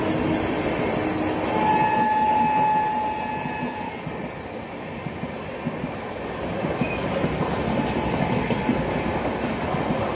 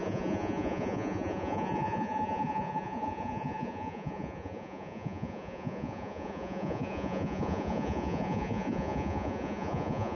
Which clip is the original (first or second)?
first